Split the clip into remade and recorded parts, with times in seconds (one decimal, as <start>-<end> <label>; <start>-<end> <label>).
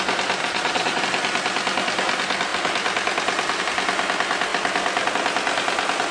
0.0-0.4 recorded; 0.4-1.0 remade; 1.0-6.1 recorded